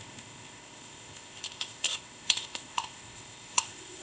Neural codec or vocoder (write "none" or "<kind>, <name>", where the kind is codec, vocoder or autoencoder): codec, ZipCodec